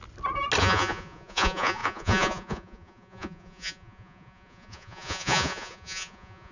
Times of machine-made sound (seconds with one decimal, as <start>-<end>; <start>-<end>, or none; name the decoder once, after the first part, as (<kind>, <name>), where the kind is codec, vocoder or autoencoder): 0.6-6.5 (vocoder, Vocos)